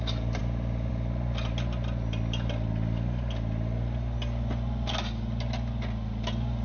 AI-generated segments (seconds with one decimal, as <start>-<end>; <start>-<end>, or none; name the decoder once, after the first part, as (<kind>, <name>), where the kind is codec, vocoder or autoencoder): none